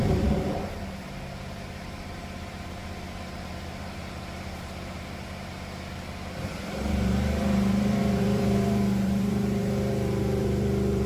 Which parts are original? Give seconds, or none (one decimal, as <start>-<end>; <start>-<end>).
5.5-6.0